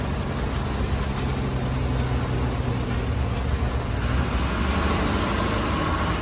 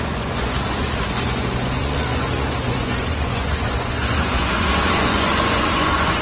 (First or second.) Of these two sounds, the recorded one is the first